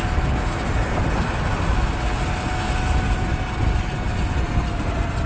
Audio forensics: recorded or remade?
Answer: recorded